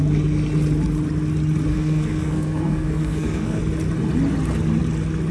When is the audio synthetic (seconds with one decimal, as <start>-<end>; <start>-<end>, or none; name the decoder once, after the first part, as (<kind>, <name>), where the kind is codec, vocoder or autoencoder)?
1.7-3.6 (codec, SNAC)